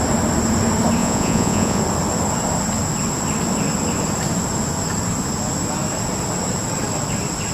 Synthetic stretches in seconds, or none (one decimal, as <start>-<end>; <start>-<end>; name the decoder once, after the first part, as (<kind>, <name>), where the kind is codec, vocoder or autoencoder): 1.0-1.8 (vocoder, Vocos)